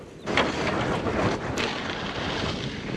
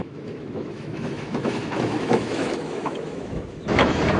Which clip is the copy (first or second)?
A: second